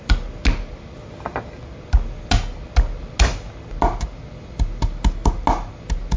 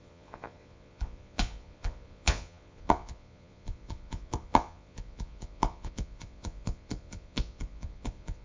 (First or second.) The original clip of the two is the first